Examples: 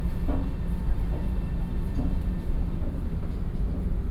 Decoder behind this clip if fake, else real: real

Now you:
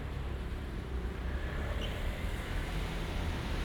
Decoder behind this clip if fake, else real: fake, vocoder, BigVGAN v2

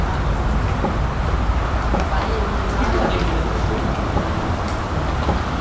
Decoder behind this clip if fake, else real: real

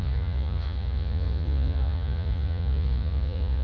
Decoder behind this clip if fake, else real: fake, vocoder, Vocos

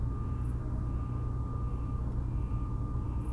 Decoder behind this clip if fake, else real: real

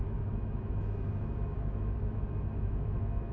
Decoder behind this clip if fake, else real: fake, autoencoder, DAC-VAE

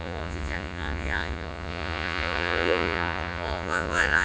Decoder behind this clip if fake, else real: fake, vocoder, Vocos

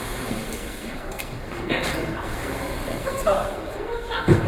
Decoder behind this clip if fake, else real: fake, codec, SNAC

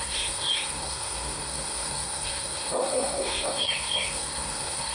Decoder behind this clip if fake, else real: fake, codec, SNAC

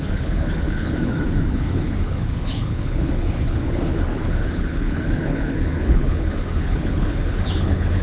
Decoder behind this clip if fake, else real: fake, codec, HILCodec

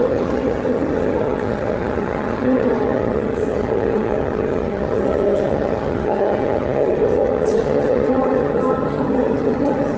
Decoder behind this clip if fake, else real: fake, vocoder, HiFi-GAN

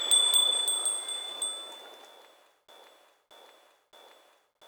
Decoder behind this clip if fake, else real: real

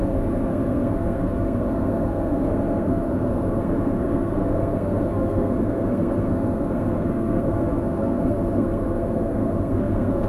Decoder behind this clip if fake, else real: fake, codec, SNAC